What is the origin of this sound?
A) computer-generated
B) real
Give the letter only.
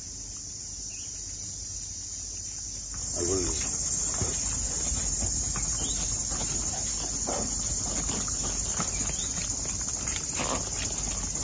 B